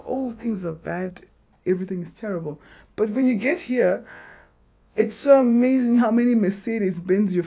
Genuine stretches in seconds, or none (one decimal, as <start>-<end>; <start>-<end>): 1.1-3.1; 6.0-7.5